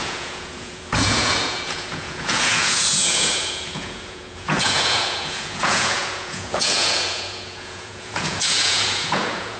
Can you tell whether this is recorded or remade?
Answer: remade